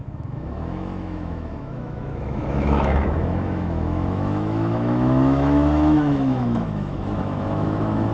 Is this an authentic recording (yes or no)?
no